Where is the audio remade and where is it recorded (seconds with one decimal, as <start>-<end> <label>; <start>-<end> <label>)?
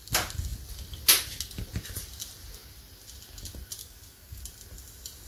0.0-3.8 recorded; 3.8-4.4 remade; 4.4-5.3 recorded